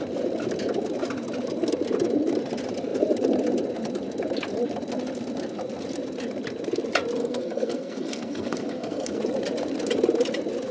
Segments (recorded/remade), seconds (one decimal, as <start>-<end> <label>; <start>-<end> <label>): 0.0-7.2 recorded; 7.2-9.2 remade; 9.2-10.7 recorded